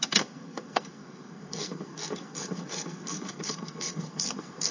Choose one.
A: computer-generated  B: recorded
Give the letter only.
A